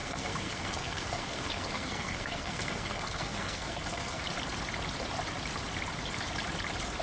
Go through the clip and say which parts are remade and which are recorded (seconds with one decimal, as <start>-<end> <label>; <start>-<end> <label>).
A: 0.0-4.2 remade; 4.2-7.0 recorded